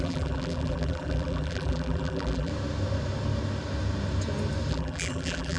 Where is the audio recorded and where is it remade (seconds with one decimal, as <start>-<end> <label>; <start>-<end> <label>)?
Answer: 0.0-2.5 remade; 2.5-4.7 recorded; 4.7-5.6 remade